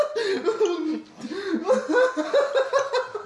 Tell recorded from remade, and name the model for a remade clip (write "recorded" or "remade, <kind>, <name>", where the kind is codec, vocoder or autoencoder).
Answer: recorded